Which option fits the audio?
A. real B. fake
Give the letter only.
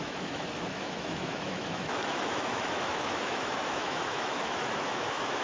B